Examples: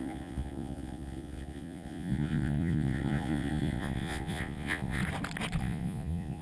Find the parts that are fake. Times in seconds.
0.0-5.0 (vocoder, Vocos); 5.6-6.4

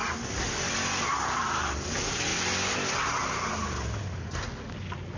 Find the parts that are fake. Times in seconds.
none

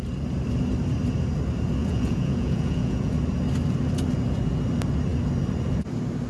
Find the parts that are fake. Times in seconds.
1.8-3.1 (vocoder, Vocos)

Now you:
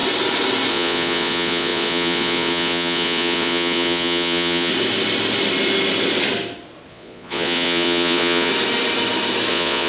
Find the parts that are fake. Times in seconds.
0.7-4.7 (vocoder, Vocos); 6.9-8.5; 9.5-9.9

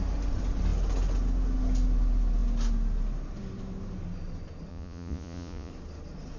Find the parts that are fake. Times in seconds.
4.7-5.7 (vocoder, Vocos)